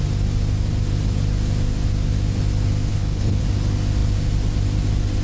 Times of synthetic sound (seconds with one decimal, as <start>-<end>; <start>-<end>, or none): 2.9-3.4